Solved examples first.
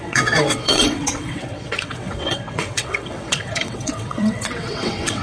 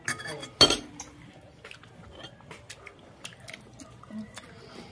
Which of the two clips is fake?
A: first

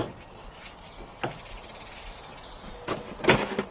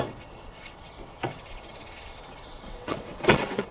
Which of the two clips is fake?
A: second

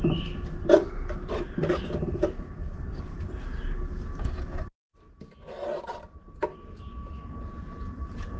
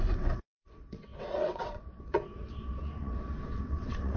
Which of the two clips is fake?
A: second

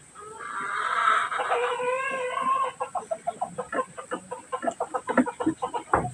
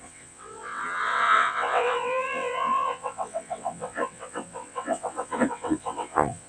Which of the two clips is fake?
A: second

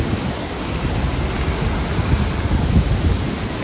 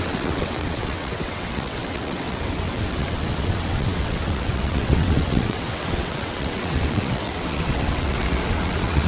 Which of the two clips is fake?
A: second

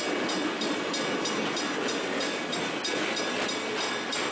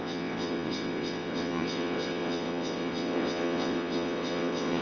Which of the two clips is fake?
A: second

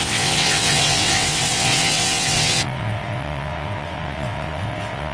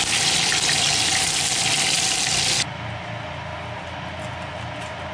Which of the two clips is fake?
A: first